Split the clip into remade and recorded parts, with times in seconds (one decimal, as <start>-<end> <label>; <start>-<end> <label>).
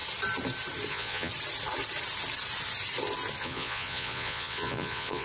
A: 0.0-0.9 recorded; 0.9-1.3 remade; 1.3-3.4 recorded; 3.4-5.2 remade